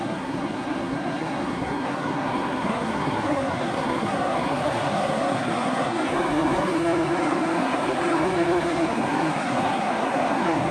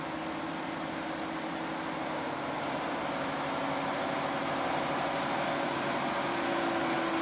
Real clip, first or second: second